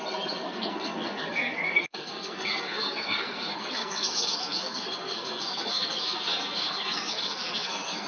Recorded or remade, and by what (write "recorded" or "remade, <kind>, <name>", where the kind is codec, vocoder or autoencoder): remade, codec, SNAC